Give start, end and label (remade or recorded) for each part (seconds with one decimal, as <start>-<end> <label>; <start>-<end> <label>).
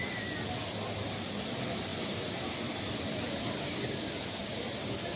0.0-5.2 recorded